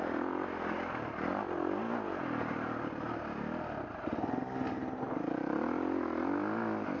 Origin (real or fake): real